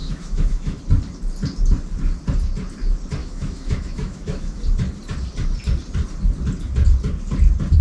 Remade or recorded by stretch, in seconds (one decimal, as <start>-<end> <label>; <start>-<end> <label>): 0.0-0.8 remade; 0.8-3.2 recorded; 3.2-4.6 remade; 4.6-7.8 recorded